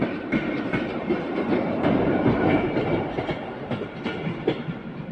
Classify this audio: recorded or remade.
remade